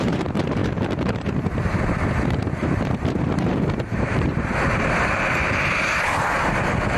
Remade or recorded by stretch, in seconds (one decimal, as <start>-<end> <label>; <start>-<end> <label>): 0.0-7.0 remade